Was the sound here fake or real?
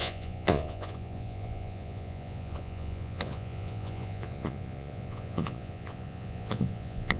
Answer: fake